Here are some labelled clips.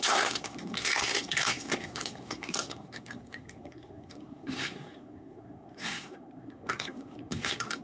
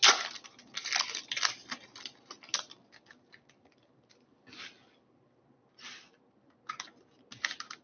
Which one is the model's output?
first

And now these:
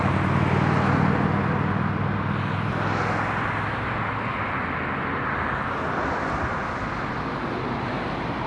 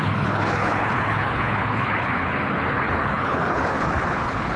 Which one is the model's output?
second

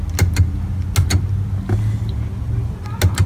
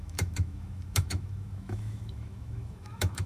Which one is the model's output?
second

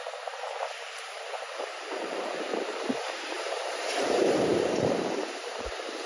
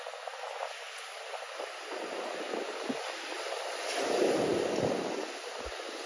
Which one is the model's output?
first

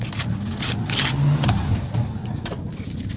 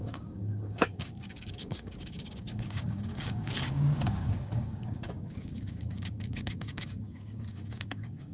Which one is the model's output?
second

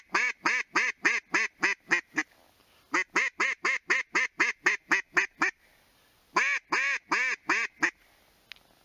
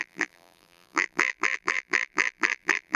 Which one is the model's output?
second